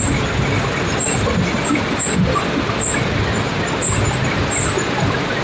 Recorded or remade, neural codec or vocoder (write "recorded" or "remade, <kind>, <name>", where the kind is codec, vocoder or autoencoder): recorded